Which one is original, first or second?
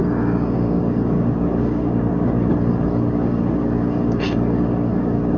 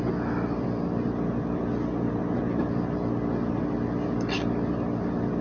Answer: second